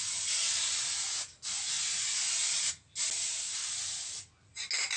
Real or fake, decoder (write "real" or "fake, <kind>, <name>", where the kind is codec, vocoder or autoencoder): real